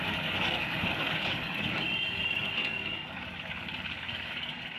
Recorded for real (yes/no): no